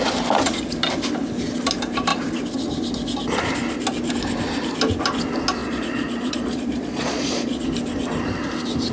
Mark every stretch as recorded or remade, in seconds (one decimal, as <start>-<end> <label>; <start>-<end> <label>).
0.0-5.6 recorded; 5.6-7.6 remade; 7.6-8.9 recorded